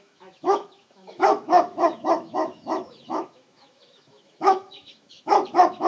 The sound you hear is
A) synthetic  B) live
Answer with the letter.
A